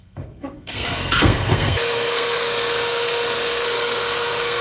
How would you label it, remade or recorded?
remade